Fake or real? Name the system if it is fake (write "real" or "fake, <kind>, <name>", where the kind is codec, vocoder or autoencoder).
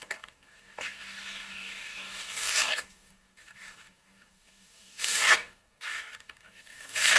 fake, codec, DAC